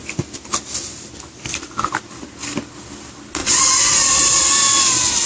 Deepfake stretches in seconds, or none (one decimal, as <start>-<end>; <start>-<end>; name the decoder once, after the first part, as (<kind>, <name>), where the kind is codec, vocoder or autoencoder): 3.4-4.5 (vocoder, Vocos)